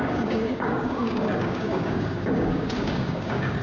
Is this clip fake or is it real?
fake